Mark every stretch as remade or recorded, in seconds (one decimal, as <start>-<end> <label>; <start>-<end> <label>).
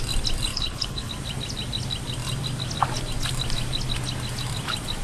0.0-0.5 recorded; 0.5-1.1 remade; 1.1-5.0 recorded